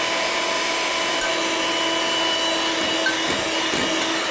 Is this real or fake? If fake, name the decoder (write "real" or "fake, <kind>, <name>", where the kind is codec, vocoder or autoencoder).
real